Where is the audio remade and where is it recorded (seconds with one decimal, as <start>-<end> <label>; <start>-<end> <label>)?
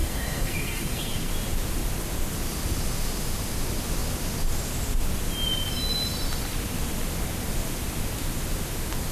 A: 0.0-1.3 remade; 1.3-9.1 recorded